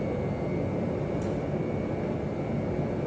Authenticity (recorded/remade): recorded